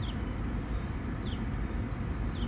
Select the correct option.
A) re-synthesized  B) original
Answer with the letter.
A